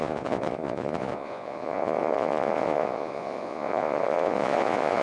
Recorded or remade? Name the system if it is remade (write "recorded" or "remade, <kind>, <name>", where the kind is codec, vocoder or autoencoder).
remade, vocoder, Vocos